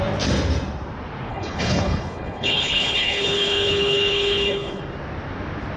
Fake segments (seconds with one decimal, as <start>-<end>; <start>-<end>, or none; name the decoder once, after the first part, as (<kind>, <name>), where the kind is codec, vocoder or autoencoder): 1.3-4.8 (codec, HILCodec)